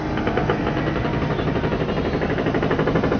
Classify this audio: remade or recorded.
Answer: recorded